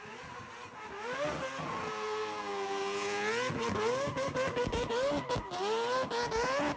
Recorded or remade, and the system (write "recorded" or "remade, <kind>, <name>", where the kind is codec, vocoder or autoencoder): recorded